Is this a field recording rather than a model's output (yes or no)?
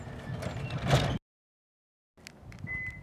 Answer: yes